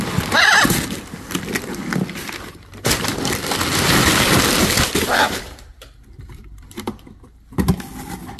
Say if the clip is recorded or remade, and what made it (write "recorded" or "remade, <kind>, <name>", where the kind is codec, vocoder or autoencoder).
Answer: remade, vocoder, BigVGAN v2